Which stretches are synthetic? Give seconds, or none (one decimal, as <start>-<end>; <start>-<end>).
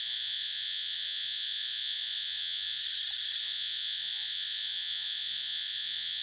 0.0-2.8; 3.4-6.2